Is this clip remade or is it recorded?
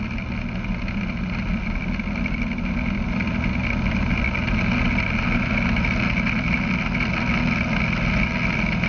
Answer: recorded